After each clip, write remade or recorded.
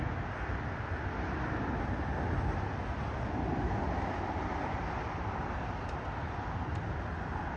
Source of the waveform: recorded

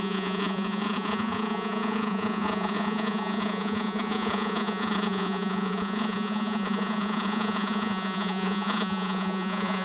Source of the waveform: remade